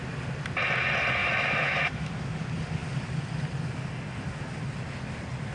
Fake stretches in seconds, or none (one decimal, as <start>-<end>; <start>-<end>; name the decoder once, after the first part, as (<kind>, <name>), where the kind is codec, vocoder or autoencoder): 1.2-2.1 (autoencoder, DAC-VAE)